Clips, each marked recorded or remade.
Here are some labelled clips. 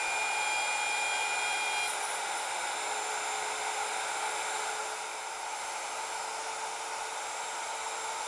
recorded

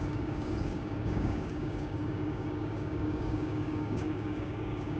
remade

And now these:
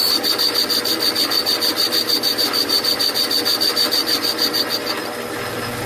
recorded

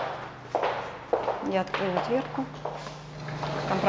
recorded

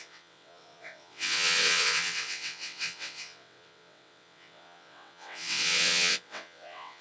remade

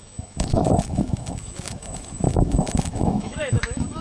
remade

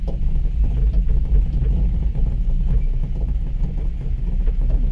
recorded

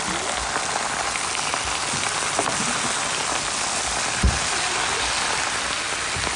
recorded